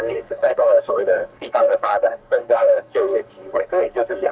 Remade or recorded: remade